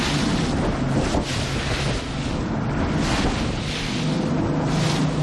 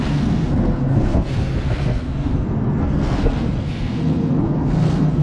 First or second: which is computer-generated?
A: second